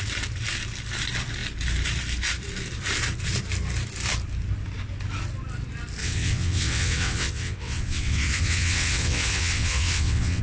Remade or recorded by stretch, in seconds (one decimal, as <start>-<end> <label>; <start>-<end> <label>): 0.0-6.0 recorded; 6.0-10.4 remade